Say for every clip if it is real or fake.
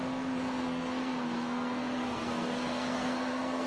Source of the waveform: fake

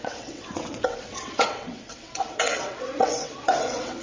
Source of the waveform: fake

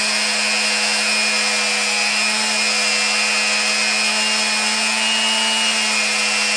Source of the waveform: real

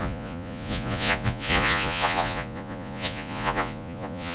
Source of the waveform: fake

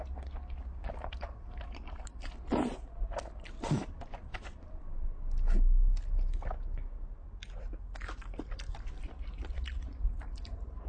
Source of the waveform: real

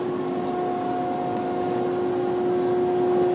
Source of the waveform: real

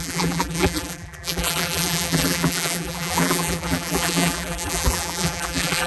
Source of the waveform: fake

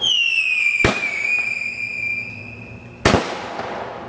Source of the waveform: real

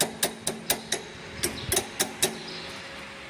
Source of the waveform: real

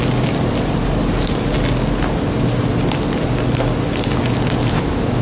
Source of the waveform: real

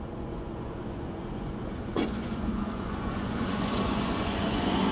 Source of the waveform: fake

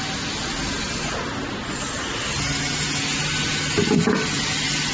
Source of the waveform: real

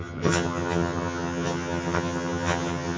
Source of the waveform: fake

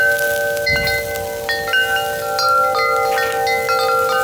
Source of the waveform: real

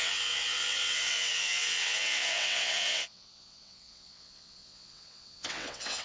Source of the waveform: fake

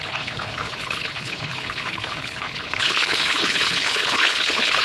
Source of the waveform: fake